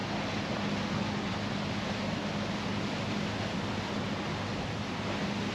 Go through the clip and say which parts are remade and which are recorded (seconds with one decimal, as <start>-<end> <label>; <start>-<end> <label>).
0.0-5.5 recorded